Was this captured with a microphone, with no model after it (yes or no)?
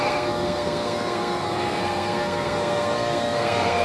no